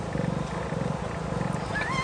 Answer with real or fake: real